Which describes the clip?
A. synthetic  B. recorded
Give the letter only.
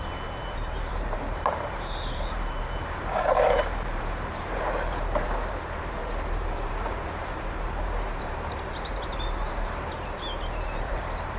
A